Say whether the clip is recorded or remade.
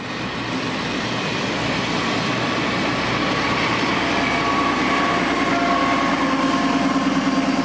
recorded